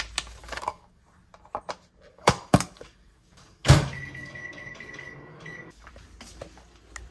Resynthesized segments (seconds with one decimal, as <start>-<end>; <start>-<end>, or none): 0.4-1.0; 2.1-5.9